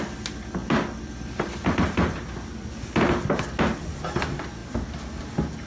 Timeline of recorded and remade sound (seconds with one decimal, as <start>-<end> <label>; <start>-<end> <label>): 0.0-5.7 recorded